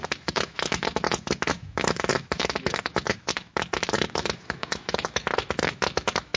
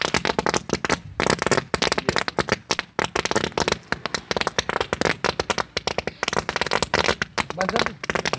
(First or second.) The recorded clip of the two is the second